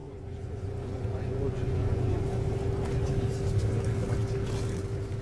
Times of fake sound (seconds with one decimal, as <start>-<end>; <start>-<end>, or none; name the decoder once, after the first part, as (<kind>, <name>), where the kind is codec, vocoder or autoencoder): 0.0-2.2 (vocoder, Vocos)